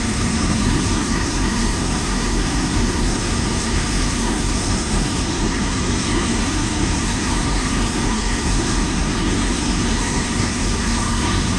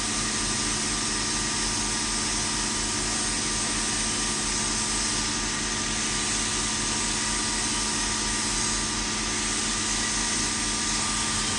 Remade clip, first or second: first